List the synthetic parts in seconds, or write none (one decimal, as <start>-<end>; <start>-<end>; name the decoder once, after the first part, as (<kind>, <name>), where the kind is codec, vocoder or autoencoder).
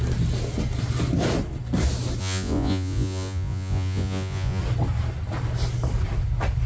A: 2.2-4.6 (vocoder, Vocos)